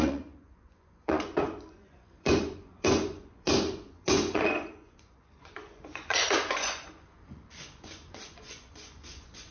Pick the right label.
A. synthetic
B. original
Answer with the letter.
A